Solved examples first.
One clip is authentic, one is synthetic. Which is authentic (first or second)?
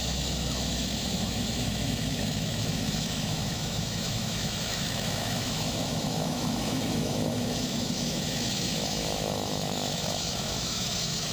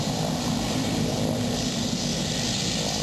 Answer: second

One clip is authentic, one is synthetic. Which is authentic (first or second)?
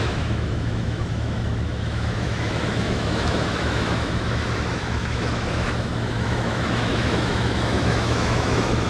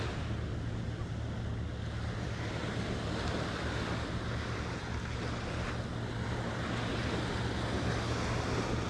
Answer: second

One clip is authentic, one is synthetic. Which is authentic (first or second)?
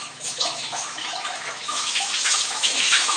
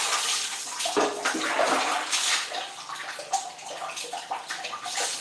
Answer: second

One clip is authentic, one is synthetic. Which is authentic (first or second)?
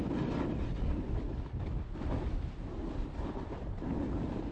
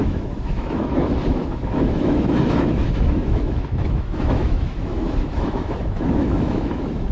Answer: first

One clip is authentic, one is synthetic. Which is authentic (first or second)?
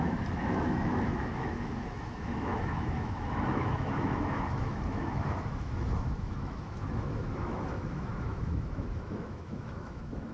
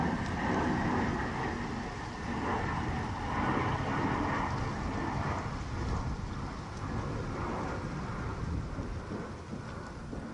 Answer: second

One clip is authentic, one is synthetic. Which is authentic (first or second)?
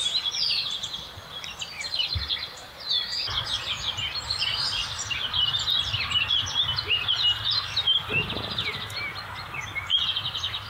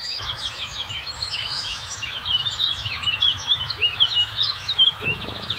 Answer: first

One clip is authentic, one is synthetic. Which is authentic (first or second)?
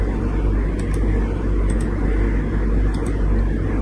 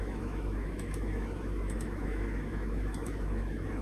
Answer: first